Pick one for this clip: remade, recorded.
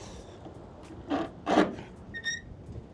recorded